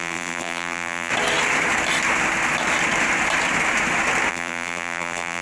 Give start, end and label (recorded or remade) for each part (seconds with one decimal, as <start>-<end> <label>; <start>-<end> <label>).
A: 0.0-1.1 remade; 1.1-4.3 recorded; 4.3-5.4 remade